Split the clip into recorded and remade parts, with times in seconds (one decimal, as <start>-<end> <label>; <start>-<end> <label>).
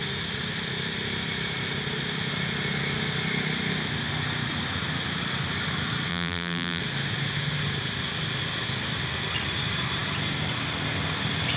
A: 0.0-6.1 recorded; 6.1-6.8 remade; 6.8-11.6 recorded